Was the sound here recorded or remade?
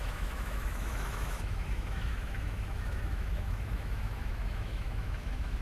remade